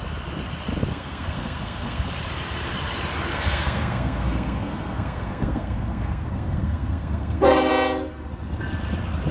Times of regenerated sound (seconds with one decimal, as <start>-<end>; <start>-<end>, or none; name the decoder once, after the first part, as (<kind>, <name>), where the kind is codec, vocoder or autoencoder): 0.9-2.1 (codec, SNAC); 3.3-7.7